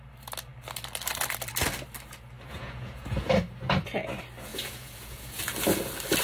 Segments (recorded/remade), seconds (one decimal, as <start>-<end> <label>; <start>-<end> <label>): 0.0-2.5 recorded; 2.5-3.3 remade; 3.3-4.5 recorded; 4.5-5.4 remade; 5.4-6.2 recorded

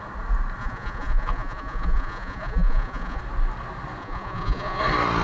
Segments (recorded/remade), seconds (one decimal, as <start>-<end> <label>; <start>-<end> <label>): 0.0-0.6 recorded; 0.6-3.2 remade; 3.2-4.0 recorded; 4.0-4.8 remade; 4.8-5.2 recorded

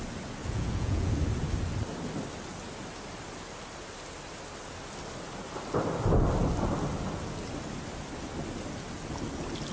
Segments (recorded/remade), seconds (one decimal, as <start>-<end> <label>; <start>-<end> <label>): 0.0-0.4 recorded; 0.4-1.1 remade; 1.1-9.7 recorded

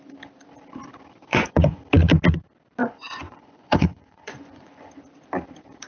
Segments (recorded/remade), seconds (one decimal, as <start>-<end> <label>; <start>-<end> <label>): 0.0-1.3 recorded; 1.3-1.8 remade; 1.8-2.8 recorded; 2.8-4.9 remade; 4.9-5.9 recorded

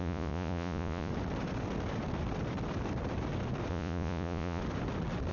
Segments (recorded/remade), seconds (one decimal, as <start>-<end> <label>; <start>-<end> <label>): 0.0-1.1 remade; 1.1-3.7 recorded; 3.7-4.6 remade; 4.6-5.3 recorded

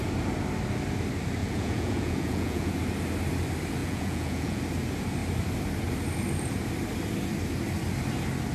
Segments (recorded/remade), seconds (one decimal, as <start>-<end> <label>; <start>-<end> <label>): 0.0-1.4 recorded; 1.4-2.7 remade; 2.7-3.8 recorded; 3.8-4.6 remade; 4.6-8.5 recorded

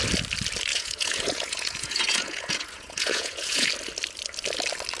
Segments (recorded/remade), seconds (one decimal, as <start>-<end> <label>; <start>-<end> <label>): 0.0-0.7 recorded; 0.7-3.7 remade; 3.7-5.0 recorded